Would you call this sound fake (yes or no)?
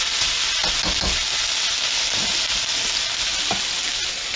no